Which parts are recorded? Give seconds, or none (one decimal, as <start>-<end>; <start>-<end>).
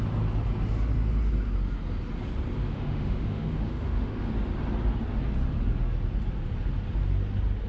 0.0-2.7; 4.3-7.7